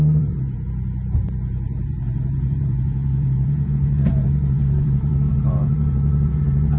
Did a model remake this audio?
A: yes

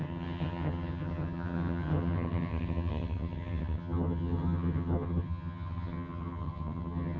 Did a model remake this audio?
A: yes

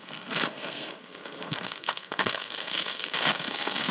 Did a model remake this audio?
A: yes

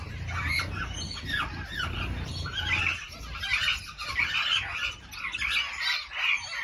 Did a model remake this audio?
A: no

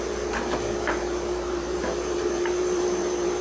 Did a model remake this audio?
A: yes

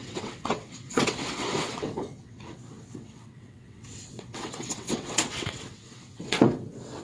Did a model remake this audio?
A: yes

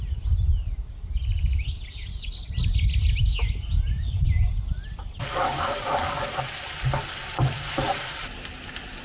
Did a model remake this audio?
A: no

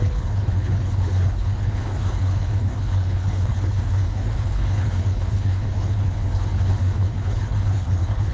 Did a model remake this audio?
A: yes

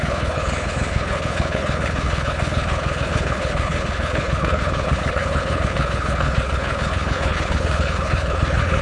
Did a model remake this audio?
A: yes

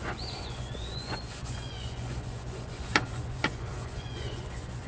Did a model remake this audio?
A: yes